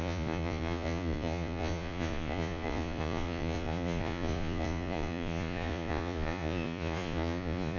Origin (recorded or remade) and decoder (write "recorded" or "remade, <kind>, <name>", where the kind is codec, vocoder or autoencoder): remade, vocoder, Vocos